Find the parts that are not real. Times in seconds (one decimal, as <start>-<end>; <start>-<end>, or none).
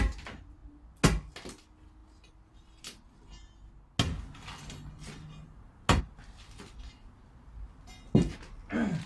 none